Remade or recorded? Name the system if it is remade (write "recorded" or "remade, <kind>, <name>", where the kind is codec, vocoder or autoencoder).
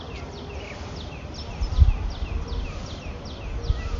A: recorded